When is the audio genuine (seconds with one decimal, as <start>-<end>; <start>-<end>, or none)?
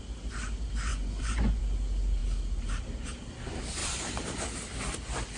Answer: 0.0-0.9; 1.6-5.4